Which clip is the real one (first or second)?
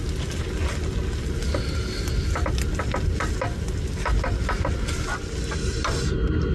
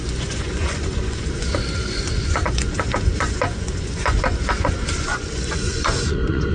first